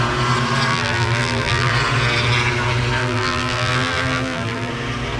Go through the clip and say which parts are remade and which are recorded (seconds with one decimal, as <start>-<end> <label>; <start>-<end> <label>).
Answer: 0.0-0.7 recorded; 0.7-1.7 remade; 1.7-3.0 recorded; 3.0-4.7 remade; 4.7-5.2 recorded